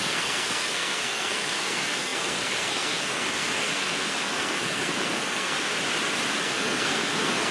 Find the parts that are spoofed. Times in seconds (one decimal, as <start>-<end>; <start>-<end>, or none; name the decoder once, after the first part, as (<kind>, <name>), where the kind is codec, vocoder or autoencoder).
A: 0.0-5.7 (codec, SNAC); 6.4-7.5